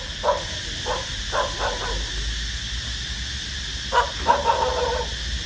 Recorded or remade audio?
recorded